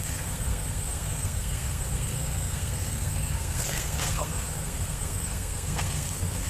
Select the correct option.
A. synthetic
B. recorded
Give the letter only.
A